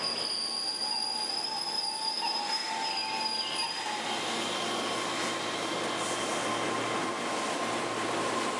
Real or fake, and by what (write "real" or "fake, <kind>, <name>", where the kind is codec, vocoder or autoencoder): real